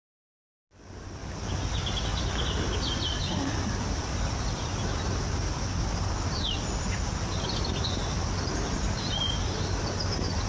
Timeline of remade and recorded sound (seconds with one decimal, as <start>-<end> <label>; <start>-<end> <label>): 0.0-10.5 recorded